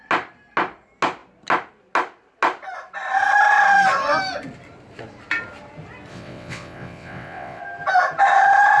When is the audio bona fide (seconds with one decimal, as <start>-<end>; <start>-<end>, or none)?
0.0-6.1; 7.6-8.8